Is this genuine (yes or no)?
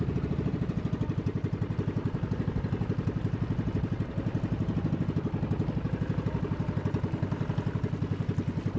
yes